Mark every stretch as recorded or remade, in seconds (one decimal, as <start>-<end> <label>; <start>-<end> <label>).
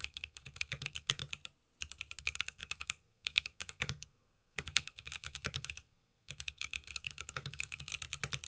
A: 0.0-1.2 remade; 1.2-2.2 recorded; 2.2-7.9 remade; 7.9-8.5 recorded